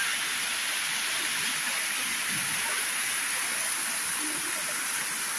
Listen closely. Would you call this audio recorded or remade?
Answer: recorded